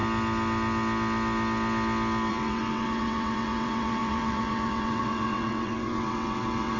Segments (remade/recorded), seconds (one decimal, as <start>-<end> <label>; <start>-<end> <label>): 0.0-2.3 recorded; 2.3-6.8 remade